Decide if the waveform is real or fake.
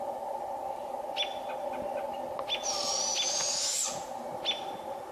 real